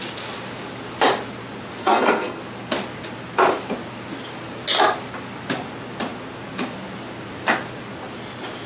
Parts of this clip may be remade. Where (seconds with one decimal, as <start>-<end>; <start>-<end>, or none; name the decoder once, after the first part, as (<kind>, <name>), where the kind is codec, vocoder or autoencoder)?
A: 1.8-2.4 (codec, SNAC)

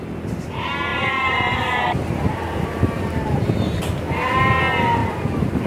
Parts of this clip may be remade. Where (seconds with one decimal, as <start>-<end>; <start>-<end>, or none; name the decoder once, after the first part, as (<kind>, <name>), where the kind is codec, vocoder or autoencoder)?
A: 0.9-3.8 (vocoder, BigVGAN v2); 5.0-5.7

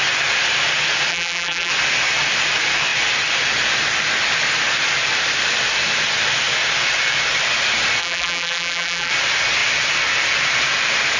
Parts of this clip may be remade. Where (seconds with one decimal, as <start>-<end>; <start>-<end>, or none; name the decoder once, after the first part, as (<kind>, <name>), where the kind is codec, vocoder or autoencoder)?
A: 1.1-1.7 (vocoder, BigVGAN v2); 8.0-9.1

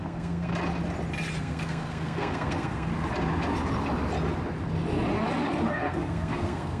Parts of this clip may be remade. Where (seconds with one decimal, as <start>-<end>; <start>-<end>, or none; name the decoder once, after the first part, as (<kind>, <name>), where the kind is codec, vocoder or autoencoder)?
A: 0.0-0.5 (codec, SNAC); 1.4-2.9; 5.7-6.8